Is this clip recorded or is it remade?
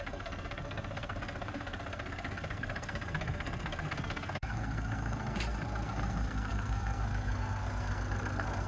remade